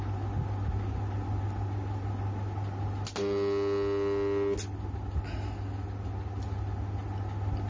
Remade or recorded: recorded